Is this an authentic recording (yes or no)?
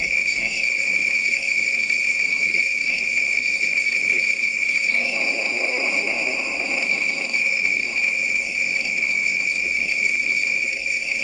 no